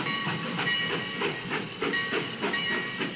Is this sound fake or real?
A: real